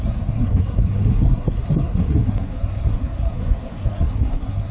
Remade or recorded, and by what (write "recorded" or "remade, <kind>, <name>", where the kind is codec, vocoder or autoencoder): remade, codec, SNAC